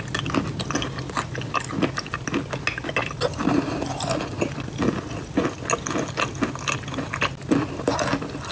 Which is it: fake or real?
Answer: real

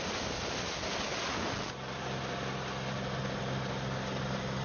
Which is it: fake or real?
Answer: real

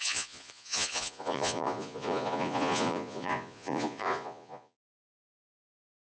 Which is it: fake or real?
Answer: fake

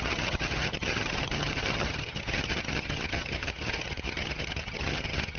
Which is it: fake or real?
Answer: fake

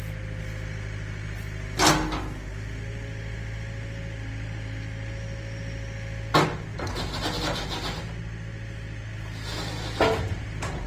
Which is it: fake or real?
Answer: real